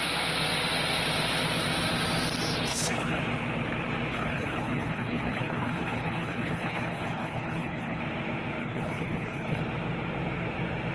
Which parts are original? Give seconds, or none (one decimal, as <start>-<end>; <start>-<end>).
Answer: 0.0-2.7; 3.2-4.1; 8.0-8.6; 9.6-10.9